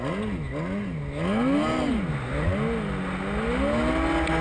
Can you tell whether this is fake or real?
real